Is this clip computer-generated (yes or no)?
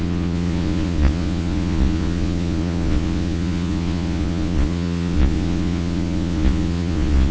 yes